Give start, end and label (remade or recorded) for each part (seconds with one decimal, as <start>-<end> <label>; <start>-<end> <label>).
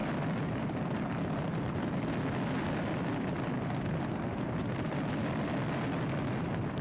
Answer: 0.0-6.8 recorded